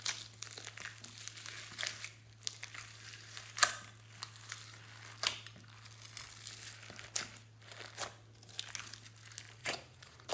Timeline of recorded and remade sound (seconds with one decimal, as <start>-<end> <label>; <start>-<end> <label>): 0.0-9.6 recorded; 9.6-10.3 remade

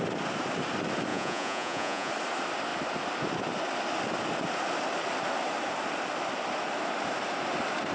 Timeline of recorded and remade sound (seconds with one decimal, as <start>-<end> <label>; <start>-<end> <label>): 0.0-1.1 recorded; 1.1-2.1 remade; 2.1-7.9 recorded

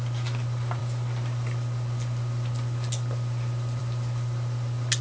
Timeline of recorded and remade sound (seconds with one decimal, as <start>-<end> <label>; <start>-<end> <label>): 0.0-5.0 recorded

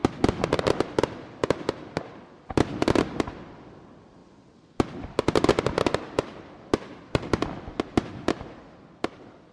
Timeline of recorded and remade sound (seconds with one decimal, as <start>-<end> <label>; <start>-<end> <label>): 0.0-9.5 recorded